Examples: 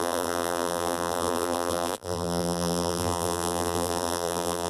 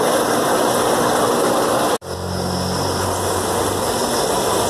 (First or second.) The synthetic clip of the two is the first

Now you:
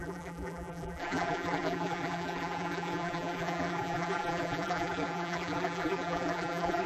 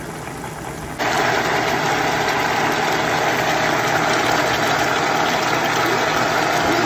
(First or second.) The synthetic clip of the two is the first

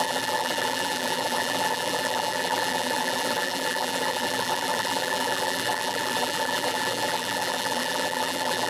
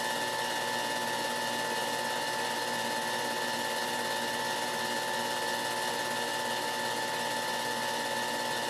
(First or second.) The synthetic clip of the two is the first